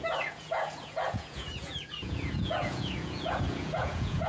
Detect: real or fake fake